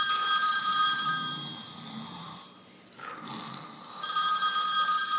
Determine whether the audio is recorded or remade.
remade